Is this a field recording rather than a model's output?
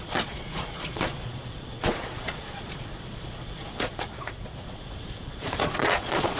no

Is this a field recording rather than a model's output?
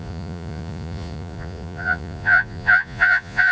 no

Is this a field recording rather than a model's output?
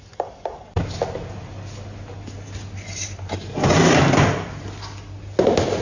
yes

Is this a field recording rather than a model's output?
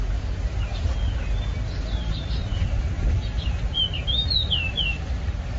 yes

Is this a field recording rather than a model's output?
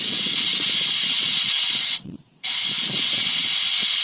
no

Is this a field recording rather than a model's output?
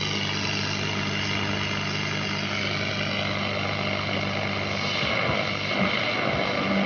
yes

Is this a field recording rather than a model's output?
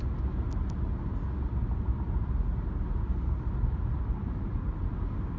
yes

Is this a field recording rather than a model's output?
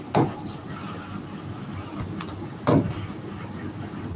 yes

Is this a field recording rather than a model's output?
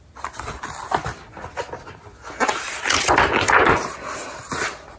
yes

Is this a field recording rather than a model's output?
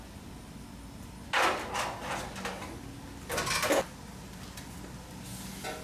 yes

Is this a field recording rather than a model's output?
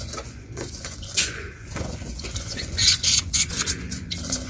no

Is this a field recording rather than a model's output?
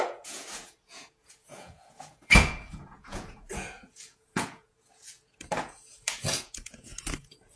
no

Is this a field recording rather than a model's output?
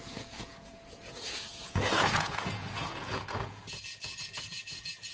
no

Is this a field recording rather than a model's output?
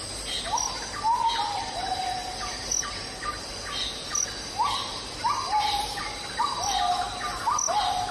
yes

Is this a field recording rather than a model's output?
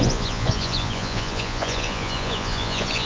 no